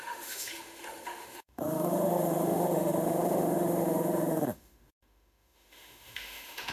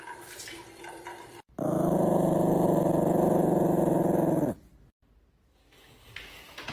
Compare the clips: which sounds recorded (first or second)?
second